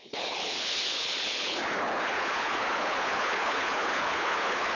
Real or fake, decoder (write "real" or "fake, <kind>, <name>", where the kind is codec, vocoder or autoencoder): fake, codec, HILCodec